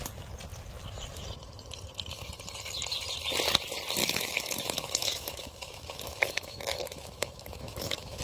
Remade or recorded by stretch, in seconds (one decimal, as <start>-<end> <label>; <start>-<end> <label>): 0.0-4.0 recorded; 4.0-8.2 remade